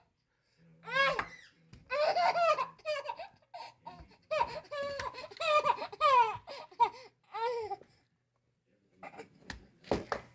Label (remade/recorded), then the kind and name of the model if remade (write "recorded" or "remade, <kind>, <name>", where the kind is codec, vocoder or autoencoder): recorded